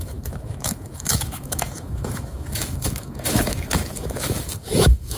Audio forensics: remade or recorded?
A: remade